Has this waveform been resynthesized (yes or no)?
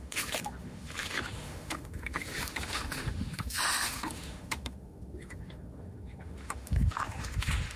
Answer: yes